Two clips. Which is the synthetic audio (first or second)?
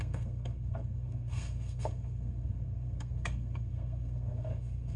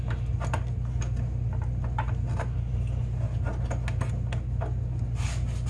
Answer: first